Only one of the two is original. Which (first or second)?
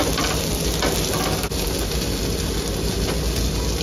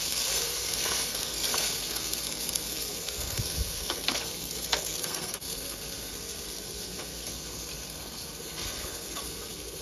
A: first